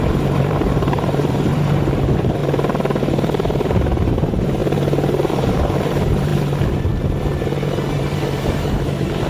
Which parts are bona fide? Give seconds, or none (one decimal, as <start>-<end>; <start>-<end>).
2.4-3.0; 4.6-5.3; 6.3-7.9